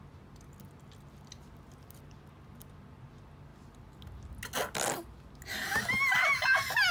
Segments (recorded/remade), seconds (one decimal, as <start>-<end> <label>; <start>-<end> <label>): 0.0-6.9 recorded